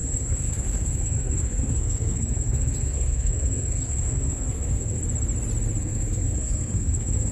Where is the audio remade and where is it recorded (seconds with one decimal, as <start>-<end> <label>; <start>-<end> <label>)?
0.0-5.0 remade; 5.0-5.8 recorded; 5.8-7.3 remade

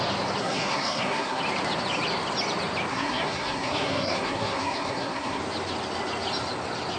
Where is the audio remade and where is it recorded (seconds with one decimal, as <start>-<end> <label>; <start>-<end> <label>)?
0.0-0.4 recorded; 0.4-1.4 remade; 1.4-2.9 recorded; 2.9-5.4 remade; 5.4-7.0 recorded

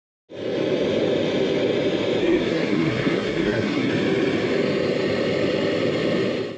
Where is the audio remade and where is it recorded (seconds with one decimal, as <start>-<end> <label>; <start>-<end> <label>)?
0.0-2.2 recorded; 2.2-3.9 remade; 3.9-6.6 recorded

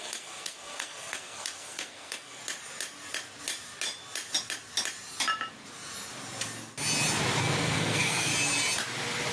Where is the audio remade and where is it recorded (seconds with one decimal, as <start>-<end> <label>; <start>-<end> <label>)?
0.0-2.4 remade; 2.4-7.4 recorded; 7.4-8.3 remade; 8.3-9.3 recorded